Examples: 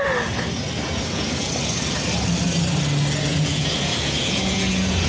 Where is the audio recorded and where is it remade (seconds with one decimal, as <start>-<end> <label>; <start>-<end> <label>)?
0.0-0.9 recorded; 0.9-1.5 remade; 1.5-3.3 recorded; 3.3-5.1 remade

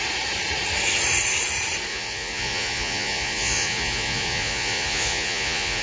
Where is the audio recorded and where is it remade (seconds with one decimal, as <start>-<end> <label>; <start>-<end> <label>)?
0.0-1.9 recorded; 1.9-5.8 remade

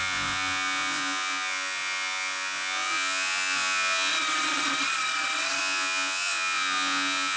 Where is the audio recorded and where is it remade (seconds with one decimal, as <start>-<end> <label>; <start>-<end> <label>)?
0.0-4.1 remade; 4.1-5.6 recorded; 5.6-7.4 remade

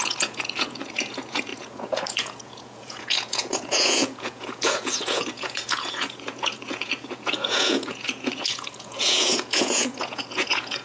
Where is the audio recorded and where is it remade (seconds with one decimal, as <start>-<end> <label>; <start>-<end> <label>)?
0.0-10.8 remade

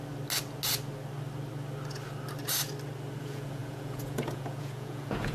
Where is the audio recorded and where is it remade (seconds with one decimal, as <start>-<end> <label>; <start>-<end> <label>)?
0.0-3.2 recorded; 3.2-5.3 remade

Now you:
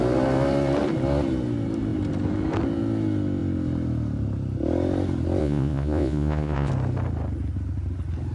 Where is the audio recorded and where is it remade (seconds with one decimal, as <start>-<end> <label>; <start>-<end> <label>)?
0.0-5.4 recorded; 5.4-6.7 remade; 6.7-8.3 recorded

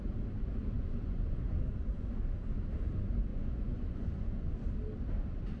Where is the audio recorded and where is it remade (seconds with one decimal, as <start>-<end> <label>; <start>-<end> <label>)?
0.0-0.6 recorded; 0.6-1.6 remade; 1.6-3.3 recorded; 3.3-4.5 remade; 4.5-5.6 recorded